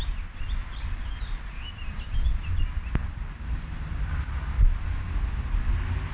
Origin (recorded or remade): recorded